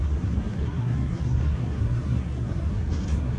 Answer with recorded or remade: remade